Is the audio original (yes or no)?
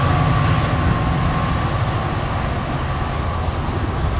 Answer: yes